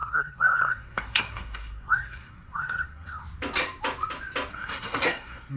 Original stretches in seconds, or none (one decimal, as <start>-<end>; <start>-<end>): 3.2-4.5